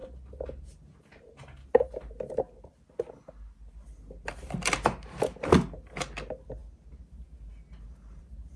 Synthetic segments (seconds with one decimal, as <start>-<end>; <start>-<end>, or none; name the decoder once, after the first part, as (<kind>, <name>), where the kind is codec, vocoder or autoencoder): none

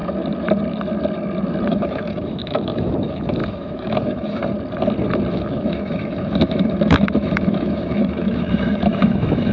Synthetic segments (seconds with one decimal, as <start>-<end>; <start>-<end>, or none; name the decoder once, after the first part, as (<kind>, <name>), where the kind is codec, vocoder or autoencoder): 1.7-4.4 (autoencoder, DAC-VAE); 5.3-9.5

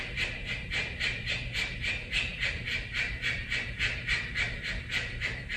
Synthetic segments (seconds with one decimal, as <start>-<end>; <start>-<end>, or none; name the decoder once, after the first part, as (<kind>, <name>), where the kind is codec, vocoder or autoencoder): 0.0-5.6 (vocoder, BigVGAN v2)